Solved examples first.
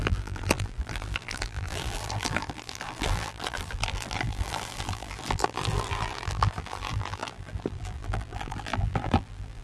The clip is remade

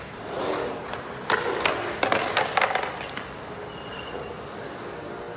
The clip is recorded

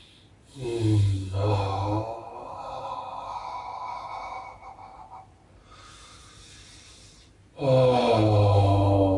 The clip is recorded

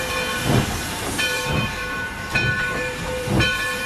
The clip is remade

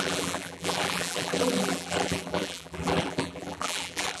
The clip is remade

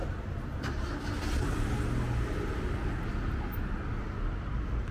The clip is recorded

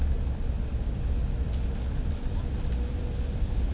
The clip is recorded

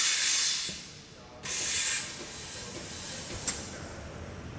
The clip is recorded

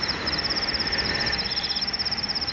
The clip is remade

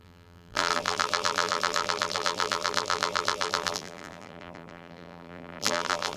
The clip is remade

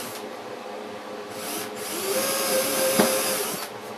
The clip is remade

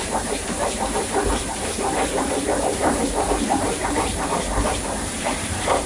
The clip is remade